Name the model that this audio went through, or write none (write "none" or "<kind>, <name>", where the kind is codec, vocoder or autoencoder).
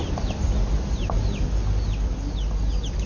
none